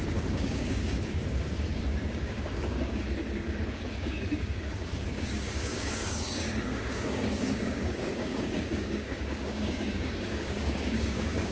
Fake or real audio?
fake